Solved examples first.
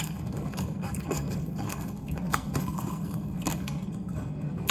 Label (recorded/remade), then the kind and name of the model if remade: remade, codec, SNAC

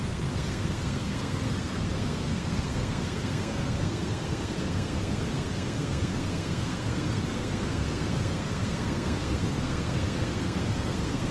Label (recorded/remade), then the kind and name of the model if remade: remade, codec, SNAC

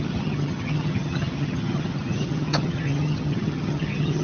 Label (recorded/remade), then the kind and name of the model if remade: remade, vocoder, HiFi-GAN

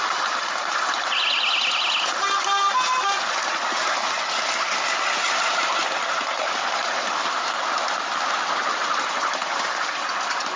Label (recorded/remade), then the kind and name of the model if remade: recorded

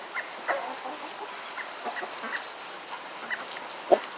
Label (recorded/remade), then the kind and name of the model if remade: recorded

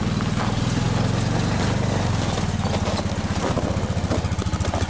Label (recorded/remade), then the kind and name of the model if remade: recorded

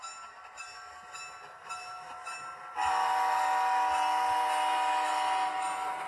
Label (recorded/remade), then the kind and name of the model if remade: recorded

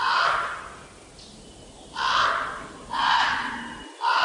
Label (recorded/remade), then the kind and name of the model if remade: recorded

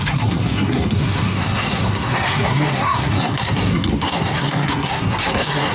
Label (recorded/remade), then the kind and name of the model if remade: remade, codec, SNAC